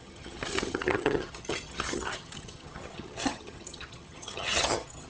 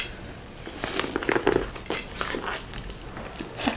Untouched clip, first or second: second